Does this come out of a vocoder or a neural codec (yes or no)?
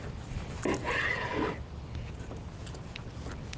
no